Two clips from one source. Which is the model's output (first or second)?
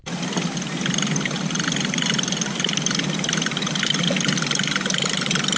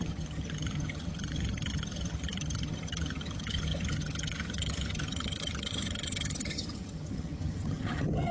second